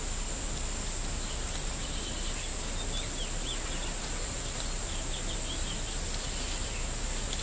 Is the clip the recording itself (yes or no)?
yes